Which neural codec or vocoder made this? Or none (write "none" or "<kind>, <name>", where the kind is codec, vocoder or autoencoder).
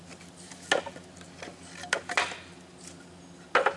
none